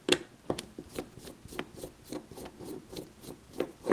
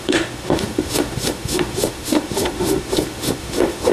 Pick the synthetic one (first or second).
second